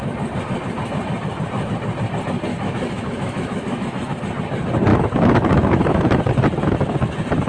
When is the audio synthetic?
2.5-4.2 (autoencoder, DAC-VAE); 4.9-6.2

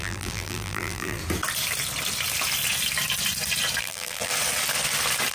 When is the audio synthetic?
0.0-1.2 (vocoder, BigVGAN v2); 3.8-4.3

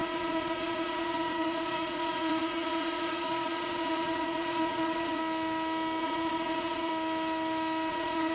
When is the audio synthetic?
0.0-5.2 (vocoder, Vocos); 6.0-6.9; 7.9-8.3

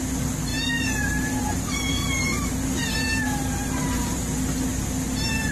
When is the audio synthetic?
0.0-4.0 (vocoder, BigVGAN v2)

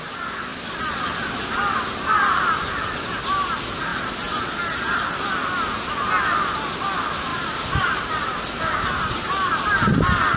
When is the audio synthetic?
7.3-8.1 (vocoder, BigVGAN v2)